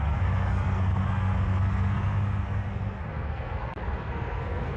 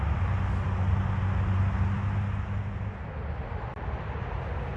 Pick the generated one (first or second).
first